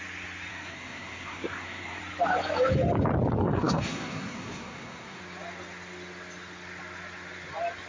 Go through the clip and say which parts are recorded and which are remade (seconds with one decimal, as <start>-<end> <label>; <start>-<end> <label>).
0.0-0.5 recorded; 0.5-2.0 remade; 2.0-3.4 recorded; 3.4-5.2 remade; 5.2-7.9 recorded